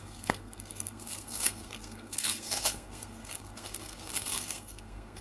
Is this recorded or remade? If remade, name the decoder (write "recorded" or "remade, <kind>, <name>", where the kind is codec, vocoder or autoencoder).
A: remade, codec, SNAC